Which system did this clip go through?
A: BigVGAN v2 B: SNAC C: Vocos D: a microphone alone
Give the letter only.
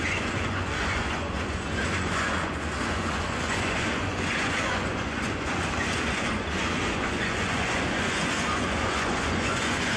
C